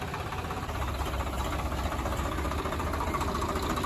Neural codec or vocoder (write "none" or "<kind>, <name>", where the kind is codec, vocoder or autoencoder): none